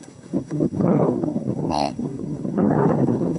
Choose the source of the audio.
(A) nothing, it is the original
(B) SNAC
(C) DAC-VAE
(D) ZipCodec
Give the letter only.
B